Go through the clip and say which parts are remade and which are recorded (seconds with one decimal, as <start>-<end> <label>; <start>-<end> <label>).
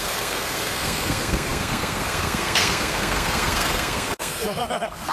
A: 0.0-5.1 remade